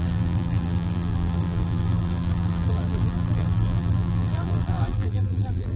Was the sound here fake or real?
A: fake